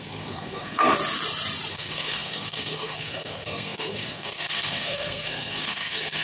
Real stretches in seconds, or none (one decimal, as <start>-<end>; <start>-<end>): 0.9-1.7